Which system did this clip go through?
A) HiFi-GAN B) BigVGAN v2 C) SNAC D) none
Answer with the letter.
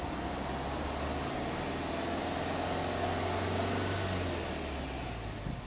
D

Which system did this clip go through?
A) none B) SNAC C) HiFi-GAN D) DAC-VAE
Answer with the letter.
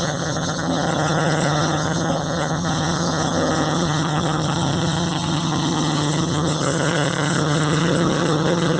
C